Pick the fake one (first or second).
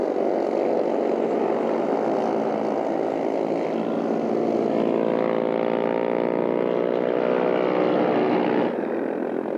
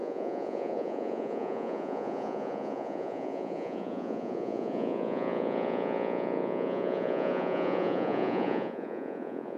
second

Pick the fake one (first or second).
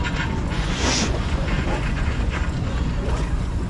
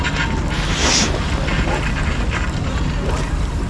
first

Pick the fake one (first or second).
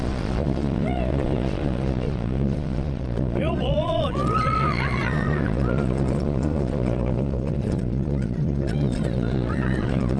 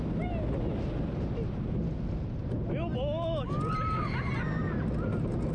first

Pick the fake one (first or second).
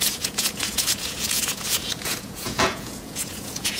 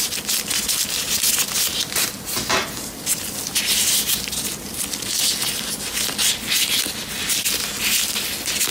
first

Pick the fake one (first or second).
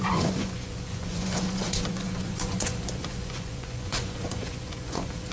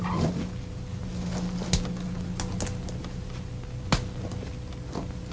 first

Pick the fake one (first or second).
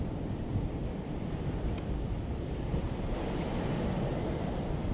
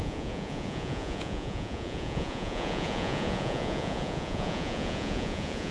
second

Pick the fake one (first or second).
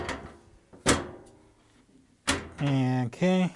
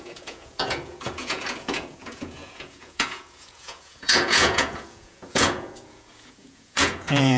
second